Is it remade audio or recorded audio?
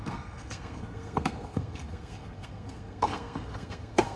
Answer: remade